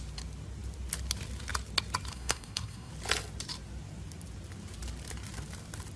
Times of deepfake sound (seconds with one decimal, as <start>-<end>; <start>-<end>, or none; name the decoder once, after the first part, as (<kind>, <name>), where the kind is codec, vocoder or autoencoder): 2.1-2.9 (codec, SNAC)